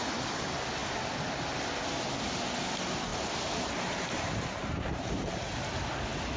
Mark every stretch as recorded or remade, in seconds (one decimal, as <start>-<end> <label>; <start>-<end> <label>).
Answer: 0.0-3.1 recorded; 3.1-5.5 remade; 5.5-6.4 recorded